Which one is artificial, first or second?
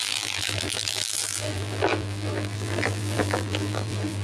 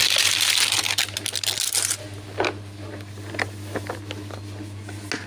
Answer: first